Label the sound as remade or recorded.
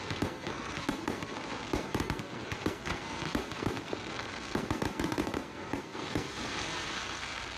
remade